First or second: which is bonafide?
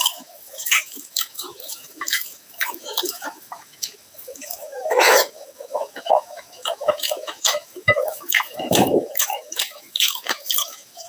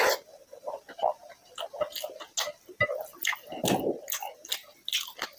second